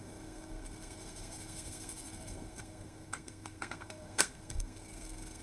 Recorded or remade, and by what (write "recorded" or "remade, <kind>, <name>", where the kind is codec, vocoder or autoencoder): remade, codec, SNAC